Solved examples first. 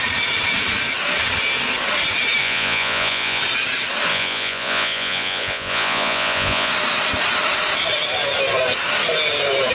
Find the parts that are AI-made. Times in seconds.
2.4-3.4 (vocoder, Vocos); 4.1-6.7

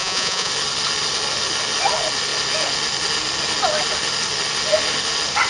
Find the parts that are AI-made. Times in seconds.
0.0-0.5 (vocoder, Vocos)

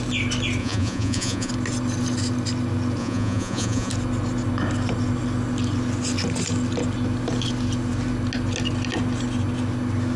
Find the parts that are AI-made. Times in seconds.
0.6-1.5 (vocoder, Vocos); 3.0-3.9

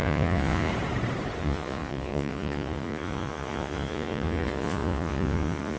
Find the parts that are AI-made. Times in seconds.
0.0-0.7 (vocoder, Vocos); 1.4-5.8